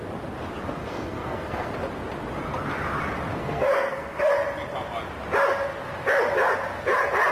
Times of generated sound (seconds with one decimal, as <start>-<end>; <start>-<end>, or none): 0.8-1.7; 3.4-4.3